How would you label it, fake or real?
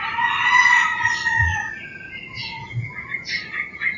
fake